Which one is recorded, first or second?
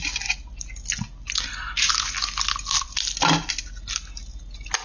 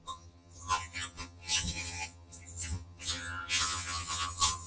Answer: first